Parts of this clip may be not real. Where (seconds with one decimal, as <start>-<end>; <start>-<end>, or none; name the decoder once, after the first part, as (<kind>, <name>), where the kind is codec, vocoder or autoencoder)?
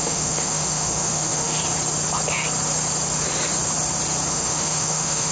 0.0-1.6 (autoencoder, DAC-VAE); 4.3-5.3